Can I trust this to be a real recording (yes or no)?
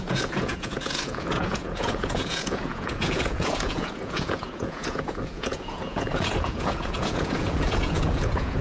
no